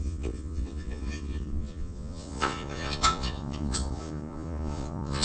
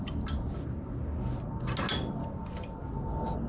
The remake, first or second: first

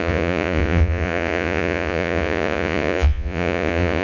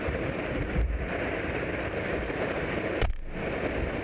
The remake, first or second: first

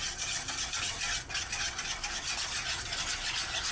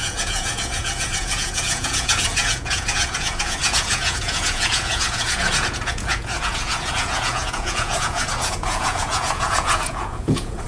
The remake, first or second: second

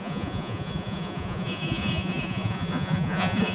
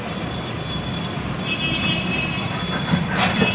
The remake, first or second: first